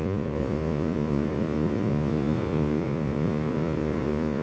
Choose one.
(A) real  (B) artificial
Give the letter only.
B